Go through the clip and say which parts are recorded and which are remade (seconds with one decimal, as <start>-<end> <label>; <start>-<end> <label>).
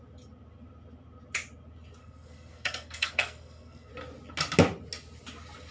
0.0-2.0 recorded; 2.0-3.9 remade; 3.9-5.7 recorded